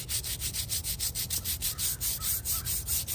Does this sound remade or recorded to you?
recorded